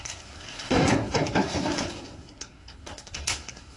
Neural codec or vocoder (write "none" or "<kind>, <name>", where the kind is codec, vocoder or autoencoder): codec, SNAC